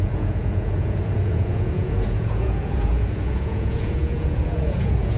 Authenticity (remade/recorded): remade